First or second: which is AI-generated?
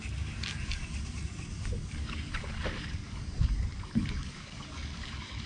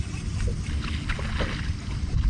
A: first